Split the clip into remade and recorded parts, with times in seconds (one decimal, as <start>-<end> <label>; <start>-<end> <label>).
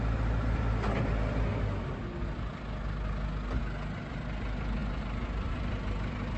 0.0-6.4 recorded